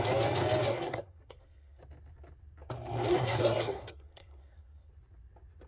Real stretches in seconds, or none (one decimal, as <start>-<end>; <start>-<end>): 0.0-0.7; 1.8-3.1; 4.9-5.7